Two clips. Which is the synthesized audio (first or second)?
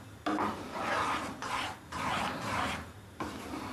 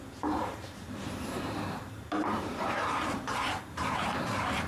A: second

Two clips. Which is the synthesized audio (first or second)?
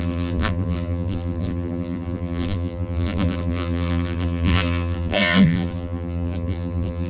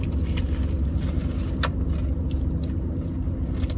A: first